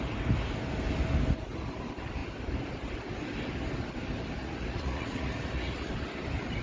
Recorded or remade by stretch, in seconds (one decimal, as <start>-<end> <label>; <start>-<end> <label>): 0.0-4.4 recorded; 4.4-5.9 remade; 5.9-6.6 recorded